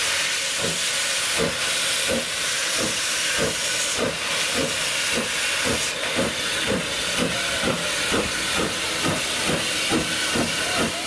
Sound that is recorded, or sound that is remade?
remade